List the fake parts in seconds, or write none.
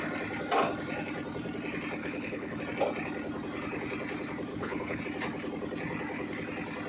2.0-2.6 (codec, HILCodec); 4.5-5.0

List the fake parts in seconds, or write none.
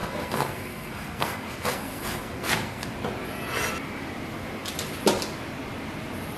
0.0-2.9 (codec, SNAC)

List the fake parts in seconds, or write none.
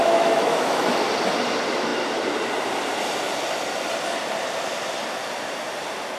0.0-0.9 (autoencoder, DAC-VAE)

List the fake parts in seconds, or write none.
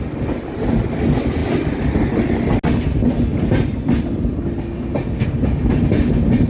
none